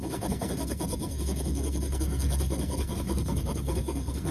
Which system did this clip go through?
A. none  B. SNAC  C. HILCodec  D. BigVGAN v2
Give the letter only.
B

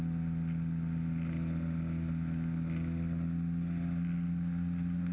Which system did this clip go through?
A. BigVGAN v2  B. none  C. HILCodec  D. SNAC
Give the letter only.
B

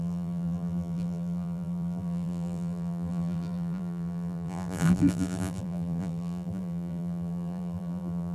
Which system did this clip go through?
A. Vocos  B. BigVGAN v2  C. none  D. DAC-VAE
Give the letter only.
B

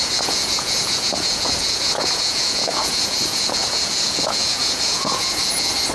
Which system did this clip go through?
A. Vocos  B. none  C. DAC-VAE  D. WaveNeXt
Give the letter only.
A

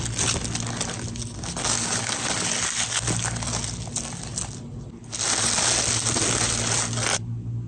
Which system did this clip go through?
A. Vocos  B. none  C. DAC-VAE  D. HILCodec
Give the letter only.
B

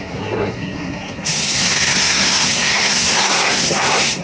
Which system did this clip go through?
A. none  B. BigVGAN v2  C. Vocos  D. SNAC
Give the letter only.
D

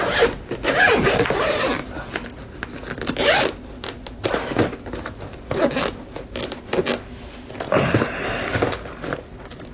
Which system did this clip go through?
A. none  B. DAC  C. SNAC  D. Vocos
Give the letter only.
A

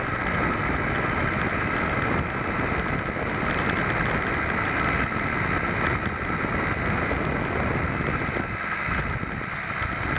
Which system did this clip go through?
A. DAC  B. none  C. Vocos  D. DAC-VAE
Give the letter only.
B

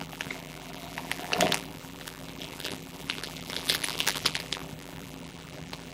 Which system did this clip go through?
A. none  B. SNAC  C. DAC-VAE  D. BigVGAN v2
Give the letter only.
D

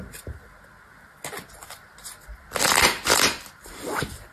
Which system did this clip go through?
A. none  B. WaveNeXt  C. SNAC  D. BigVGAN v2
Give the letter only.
A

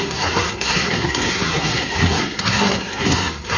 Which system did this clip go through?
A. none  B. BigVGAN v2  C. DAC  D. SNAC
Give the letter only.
D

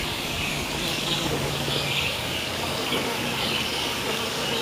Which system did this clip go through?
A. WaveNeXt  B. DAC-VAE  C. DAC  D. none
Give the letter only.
C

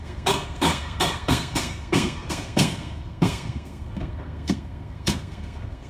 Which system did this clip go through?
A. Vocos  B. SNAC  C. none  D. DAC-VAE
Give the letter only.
B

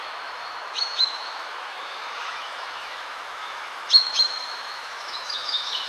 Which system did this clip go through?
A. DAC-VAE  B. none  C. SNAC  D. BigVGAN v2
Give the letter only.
A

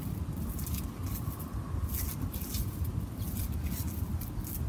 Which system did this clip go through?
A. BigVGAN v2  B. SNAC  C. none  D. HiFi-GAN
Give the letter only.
C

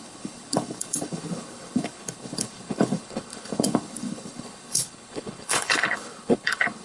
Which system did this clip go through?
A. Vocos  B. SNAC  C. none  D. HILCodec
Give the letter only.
D